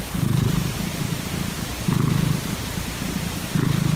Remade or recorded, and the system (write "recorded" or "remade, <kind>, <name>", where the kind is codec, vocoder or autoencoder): recorded